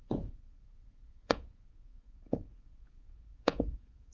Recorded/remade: remade